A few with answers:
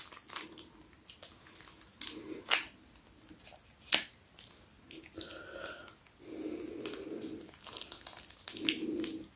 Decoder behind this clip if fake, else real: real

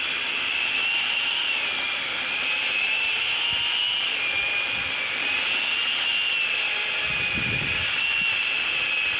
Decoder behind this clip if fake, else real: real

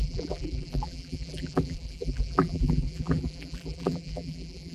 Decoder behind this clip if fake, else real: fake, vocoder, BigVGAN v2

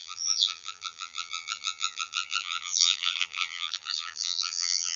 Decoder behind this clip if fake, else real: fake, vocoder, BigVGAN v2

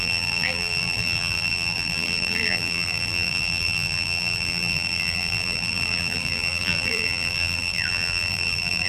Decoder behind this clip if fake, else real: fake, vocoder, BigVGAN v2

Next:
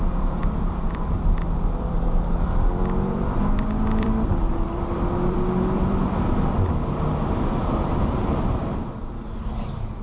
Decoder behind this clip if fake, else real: fake, vocoder, BigVGAN v2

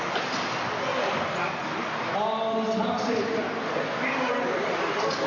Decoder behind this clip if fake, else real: real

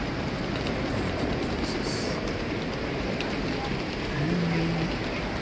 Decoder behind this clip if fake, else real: fake, vocoder, BigVGAN v2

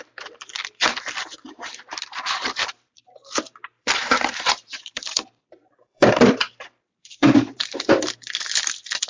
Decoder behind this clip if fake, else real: fake, vocoder, BigVGAN v2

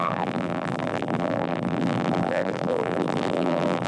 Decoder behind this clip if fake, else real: fake, vocoder, BigVGAN v2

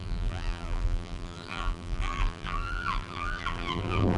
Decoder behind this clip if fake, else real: fake, vocoder, BigVGAN v2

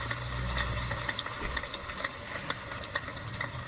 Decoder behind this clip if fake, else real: real